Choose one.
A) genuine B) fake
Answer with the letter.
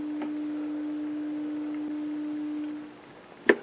A